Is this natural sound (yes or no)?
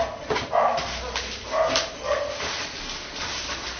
yes